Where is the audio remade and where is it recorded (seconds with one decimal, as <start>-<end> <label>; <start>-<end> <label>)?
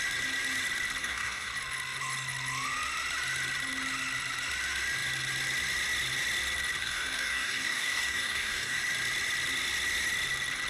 0.0-1.0 recorded; 1.0-1.5 remade; 1.5-6.8 recorded; 6.8-8.8 remade; 8.8-10.7 recorded